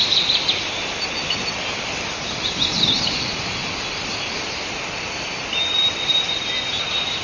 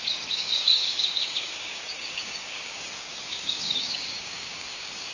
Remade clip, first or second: second